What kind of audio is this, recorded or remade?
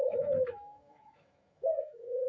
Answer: remade